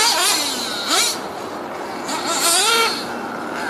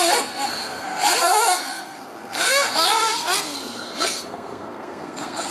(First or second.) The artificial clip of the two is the second